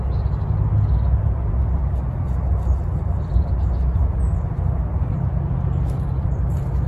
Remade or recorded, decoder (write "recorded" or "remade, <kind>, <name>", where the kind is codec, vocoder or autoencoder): recorded